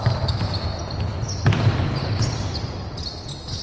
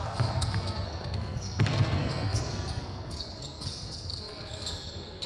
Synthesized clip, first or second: second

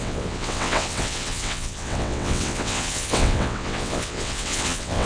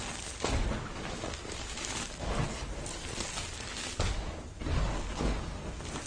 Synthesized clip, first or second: first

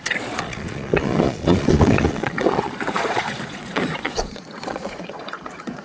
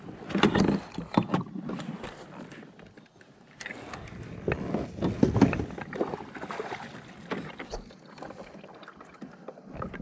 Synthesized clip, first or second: first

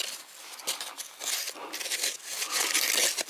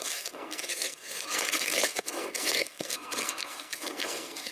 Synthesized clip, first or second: second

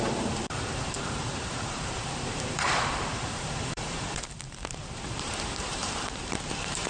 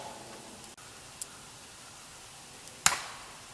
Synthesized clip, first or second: first